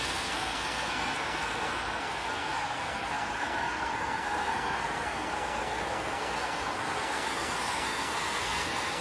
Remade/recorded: remade